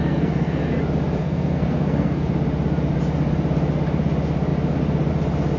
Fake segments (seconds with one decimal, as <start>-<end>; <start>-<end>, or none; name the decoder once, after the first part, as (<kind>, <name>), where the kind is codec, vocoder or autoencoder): 0.0-0.6 (codec, SNAC); 1.2-2.3